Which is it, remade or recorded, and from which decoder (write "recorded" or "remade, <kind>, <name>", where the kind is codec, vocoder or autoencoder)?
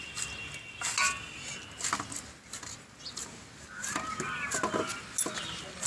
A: recorded